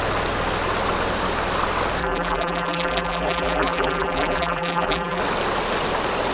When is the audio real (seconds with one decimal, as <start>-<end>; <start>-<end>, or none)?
0.0-2.0; 5.2-6.3